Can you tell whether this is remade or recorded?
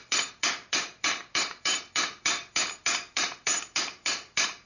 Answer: remade